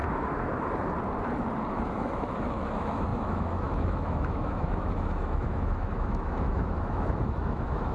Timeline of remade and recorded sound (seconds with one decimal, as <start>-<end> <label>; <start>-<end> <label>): 0.0-1.7 recorded; 1.7-7.9 remade